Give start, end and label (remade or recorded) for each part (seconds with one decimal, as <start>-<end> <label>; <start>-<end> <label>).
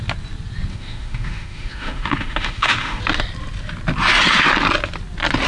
0.0-0.7 recorded; 0.7-3.0 remade; 3.0-5.5 recorded